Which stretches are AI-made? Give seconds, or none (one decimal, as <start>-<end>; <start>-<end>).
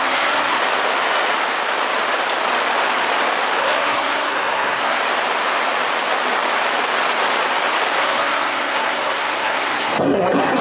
0.0-0.6; 3.6-5.0; 8.0-10.6